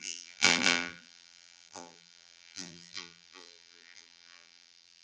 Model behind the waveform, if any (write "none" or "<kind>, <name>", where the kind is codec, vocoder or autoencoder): vocoder, BigVGAN v2